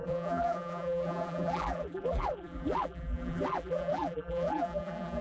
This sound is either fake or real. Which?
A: fake